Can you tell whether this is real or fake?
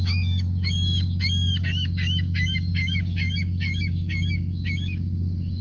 fake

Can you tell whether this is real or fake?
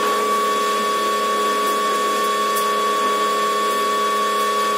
real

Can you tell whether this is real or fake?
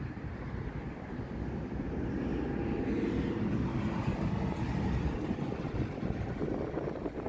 real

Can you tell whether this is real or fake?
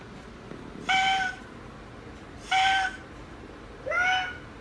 real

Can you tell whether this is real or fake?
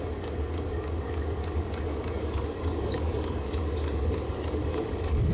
fake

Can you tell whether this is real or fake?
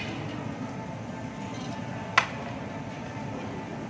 real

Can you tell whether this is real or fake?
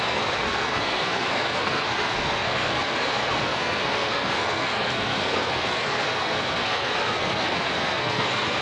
fake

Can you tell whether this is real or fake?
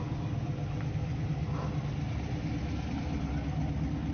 real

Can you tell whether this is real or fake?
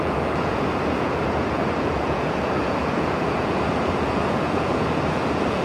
fake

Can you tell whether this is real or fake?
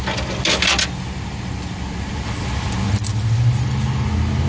real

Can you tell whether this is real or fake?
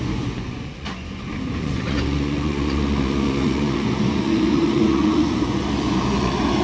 fake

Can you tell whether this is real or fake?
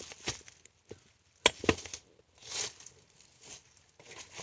real